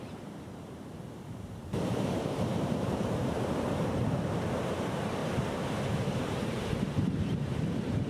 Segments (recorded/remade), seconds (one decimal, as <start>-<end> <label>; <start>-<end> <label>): 0.0-5.2 remade; 5.2-6.1 recorded; 6.1-8.1 remade